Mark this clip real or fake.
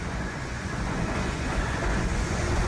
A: fake